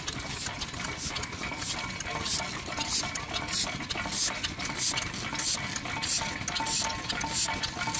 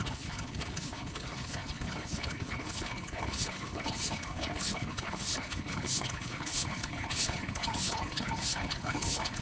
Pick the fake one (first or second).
second